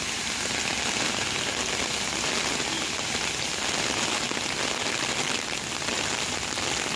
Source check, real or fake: real